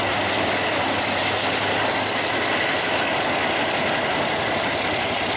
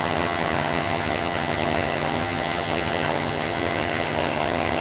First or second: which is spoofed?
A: second